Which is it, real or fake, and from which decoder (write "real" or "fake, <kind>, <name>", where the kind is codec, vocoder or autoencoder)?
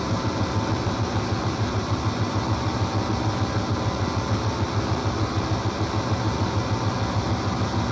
real